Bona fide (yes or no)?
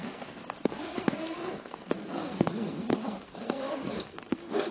no